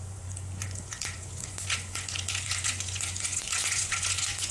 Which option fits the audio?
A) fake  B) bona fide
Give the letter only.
A